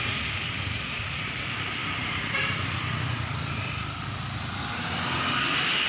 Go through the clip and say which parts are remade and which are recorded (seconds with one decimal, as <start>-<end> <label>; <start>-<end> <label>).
0.0-1.8 recorded; 1.8-5.3 remade; 5.3-5.9 recorded

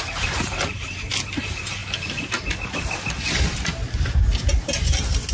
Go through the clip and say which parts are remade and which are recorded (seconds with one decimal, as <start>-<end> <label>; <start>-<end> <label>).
0.0-1.8 remade; 1.8-5.3 recorded

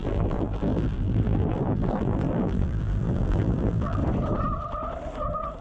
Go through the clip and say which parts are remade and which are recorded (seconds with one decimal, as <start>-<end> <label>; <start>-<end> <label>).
0.0-4.0 remade; 4.0-5.6 recorded

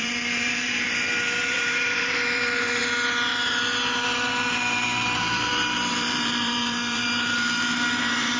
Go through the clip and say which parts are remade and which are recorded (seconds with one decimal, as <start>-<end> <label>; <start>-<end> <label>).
0.0-2.8 remade; 2.8-4.0 recorded; 4.0-8.4 remade

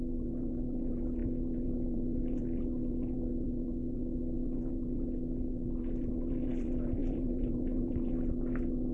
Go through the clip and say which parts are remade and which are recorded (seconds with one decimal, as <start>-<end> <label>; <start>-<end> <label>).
0.0-7.0 recorded; 7.0-7.9 remade; 7.9-8.9 recorded

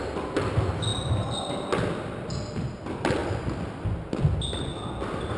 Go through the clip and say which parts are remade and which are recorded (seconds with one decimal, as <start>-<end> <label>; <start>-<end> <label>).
0.0-5.4 recorded

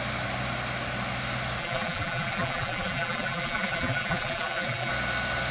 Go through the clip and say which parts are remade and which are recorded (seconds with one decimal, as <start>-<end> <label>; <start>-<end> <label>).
0.0-1.6 recorded; 1.6-4.9 remade; 4.9-5.5 recorded

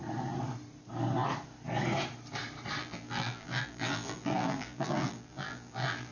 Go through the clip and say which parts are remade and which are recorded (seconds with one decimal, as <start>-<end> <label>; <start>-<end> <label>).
0.0-2.8 recorded; 2.8-6.1 remade